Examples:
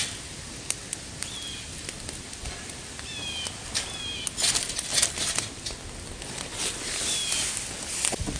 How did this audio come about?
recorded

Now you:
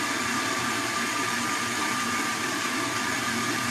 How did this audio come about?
recorded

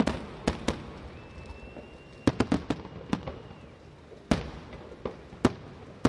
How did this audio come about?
recorded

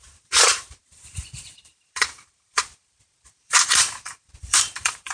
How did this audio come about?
remade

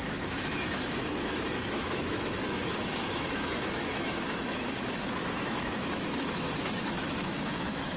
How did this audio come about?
remade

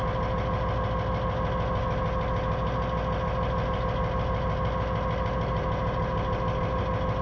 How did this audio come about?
recorded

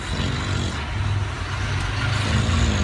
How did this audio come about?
recorded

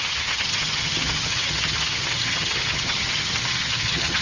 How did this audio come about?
remade